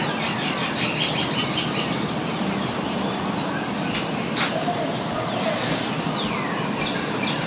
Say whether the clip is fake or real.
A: real